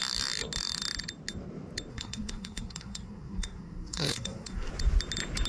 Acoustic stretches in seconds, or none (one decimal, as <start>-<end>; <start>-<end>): 0.0-1.9; 4.7-5.5